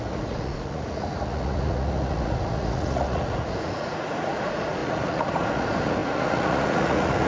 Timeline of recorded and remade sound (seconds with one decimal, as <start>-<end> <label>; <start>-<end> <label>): 0.0-7.3 remade